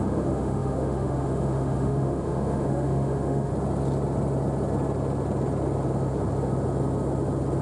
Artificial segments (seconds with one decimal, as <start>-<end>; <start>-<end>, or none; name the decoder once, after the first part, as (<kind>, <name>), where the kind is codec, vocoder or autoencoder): 0.0-3.5 (autoencoder, DAC-VAE)